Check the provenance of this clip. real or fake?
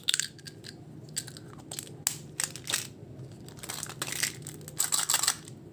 real